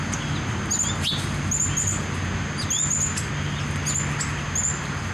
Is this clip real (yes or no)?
yes